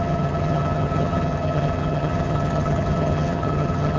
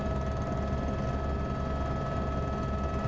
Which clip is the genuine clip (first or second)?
second